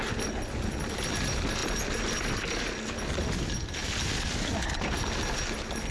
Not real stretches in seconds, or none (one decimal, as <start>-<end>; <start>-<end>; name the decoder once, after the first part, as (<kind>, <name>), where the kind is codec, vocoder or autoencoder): none